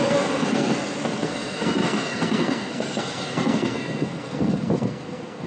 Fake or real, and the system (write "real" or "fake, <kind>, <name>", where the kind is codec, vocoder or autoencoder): fake, codec, SNAC